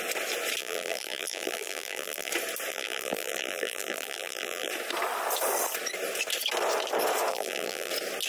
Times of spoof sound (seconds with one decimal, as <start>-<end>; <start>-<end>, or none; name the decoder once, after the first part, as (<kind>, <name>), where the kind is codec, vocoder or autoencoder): 0.6-2.3 (vocoder, BigVGAN v2); 2.7-4.7; 7.3-7.9